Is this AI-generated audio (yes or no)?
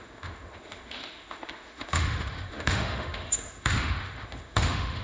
yes